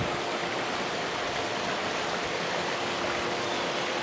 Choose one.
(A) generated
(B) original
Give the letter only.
B